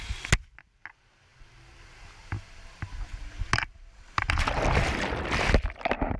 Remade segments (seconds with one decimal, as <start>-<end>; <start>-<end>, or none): none